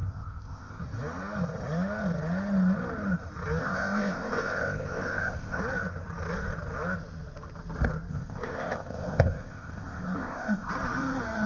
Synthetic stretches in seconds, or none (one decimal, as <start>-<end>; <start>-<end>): 0.0-0.8; 3.6-5.6; 8.1-10.7